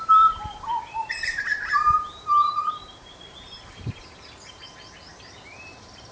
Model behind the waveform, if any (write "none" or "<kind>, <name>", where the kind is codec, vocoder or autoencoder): vocoder, BigVGAN v2